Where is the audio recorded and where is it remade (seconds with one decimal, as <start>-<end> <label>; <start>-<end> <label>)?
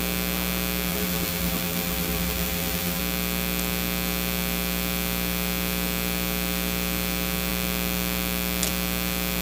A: 0.0-0.9 recorded; 0.9-3.0 remade; 3.0-9.4 recorded